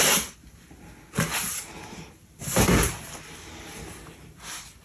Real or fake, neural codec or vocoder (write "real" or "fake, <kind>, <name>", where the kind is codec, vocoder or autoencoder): real